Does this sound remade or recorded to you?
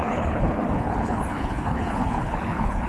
remade